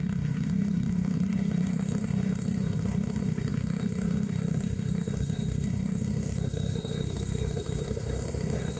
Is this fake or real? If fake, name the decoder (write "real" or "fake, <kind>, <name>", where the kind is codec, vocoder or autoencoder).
fake, codec, SNAC